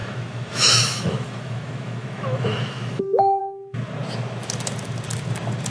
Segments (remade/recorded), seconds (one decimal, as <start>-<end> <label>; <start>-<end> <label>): 0.0-3.4 remade; 3.4-5.7 recorded